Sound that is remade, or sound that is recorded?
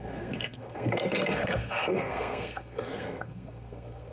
remade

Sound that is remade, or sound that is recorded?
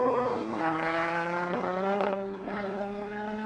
remade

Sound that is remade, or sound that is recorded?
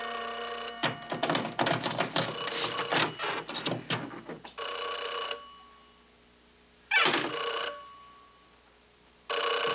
recorded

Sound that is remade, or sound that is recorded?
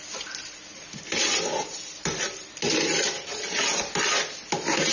recorded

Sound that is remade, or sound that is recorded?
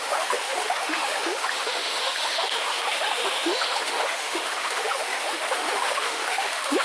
remade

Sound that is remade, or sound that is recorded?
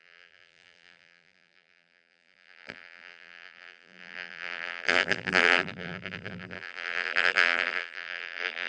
remade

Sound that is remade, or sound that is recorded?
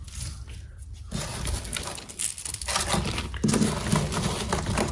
recorded